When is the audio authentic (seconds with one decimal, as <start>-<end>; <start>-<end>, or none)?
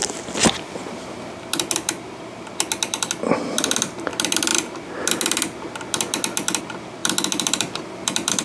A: 0.0-8.4